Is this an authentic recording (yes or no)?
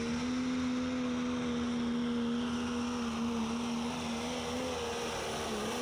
yes